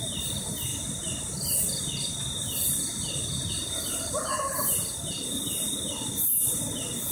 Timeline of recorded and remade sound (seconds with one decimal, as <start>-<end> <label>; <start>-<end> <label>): 0.0-0.7 remade; 0.7-3.5 recorded; 3.5-7.1 remade